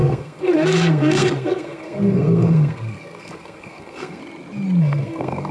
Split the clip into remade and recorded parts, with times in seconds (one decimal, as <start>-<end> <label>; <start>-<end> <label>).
0.0-4.2 remade; 4.2-4.8 recorded; 4.8-5.5 remade